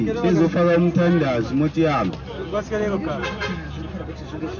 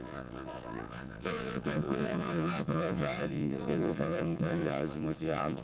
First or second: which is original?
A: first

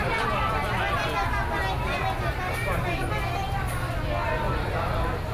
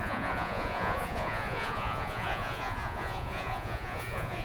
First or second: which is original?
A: first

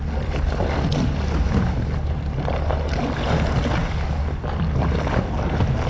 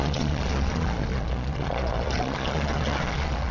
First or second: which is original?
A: first